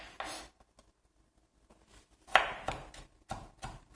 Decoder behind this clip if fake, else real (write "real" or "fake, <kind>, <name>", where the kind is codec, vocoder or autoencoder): real